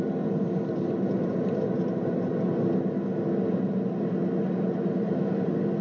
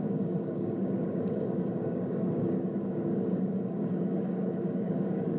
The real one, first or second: first